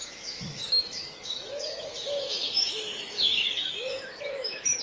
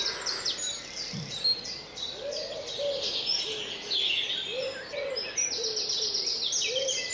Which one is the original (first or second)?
second